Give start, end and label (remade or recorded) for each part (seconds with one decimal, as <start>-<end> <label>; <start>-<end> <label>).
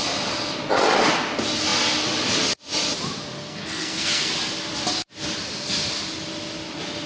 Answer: 0.0-3.4 recorded; 3.4-4.3 remade; 4.3-7.1 recorded